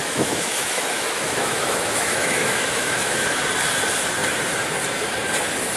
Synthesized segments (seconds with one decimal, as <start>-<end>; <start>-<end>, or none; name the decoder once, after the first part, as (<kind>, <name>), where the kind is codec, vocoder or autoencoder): 0.0-3.4 (autoencoder, DAC-VAE)